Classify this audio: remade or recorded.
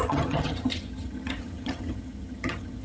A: remade